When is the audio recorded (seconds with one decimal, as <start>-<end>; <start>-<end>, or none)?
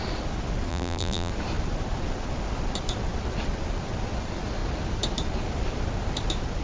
0.0-0.7; 1.3-6.6